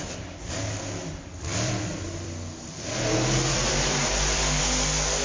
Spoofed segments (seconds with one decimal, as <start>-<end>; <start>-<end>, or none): 1.5-4.6